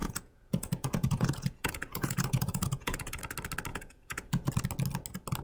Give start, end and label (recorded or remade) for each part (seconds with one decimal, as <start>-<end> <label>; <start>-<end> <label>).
0.0-3.2 remade; 3.2-3.7 recorded; 3.7-4.5 remade; 4.5-5.4 recorded